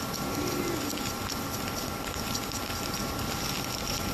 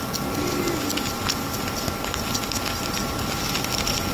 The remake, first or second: first